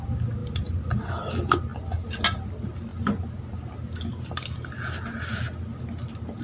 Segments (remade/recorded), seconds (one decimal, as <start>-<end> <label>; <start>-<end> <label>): 0.0-6.4 recorded